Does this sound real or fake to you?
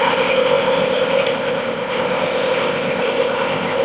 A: fake